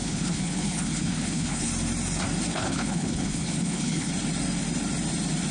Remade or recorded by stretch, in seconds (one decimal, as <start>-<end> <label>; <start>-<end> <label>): 0.0-1.7 remade; 1.7-2.5 recorded; 2.5-4.1 remade; 4.1-5.5 recorded